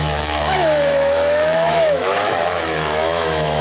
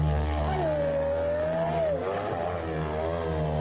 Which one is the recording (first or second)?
second